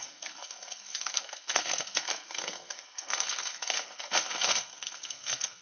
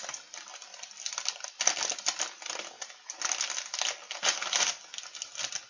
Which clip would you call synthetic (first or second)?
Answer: first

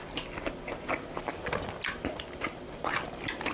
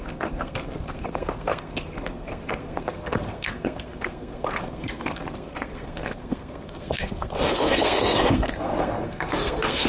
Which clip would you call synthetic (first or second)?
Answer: second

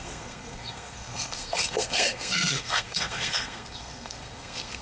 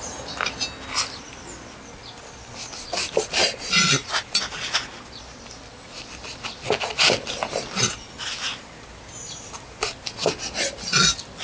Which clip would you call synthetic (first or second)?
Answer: first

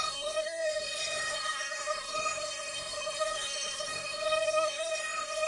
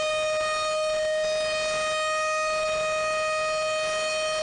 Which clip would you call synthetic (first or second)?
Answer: first